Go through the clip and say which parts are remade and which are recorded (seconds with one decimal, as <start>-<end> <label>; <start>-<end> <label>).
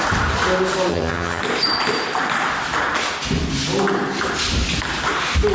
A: 0.0-0.9 recorded; 0.9-1.4 remade; 1.4-5.5 recorded